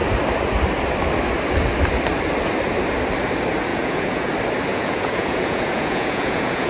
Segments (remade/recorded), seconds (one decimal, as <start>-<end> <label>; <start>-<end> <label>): 0.0-3.7 recorded; 3.7-4.3 remade; 4.3-4.7 recorded; 4.7-6.7 remade